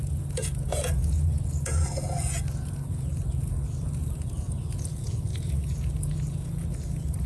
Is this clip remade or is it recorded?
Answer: remade